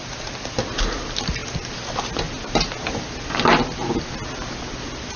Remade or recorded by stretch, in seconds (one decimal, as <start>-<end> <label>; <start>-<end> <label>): 0.0-5.2 recorded